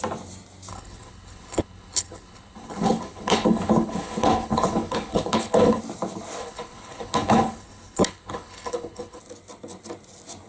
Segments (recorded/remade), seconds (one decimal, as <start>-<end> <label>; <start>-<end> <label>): 0.0-0.7 recorded; 0.7-5.8 remade; 5.8-6.4 recorded; 6.4-9.2 remade; 9.2-10.5 recorded